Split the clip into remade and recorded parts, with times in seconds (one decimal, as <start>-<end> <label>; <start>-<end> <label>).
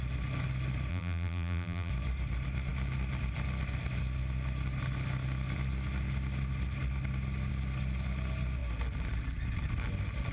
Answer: 0.0-0.9 recorded; 0.9-1.9 remade; 1.9-10.3 recorded